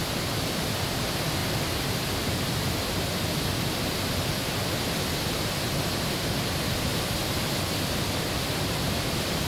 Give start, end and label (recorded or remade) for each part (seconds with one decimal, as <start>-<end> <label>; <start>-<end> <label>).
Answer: 0.0-1.4 remade; 1.4-2.2 recorded; 2.2-9.5 remade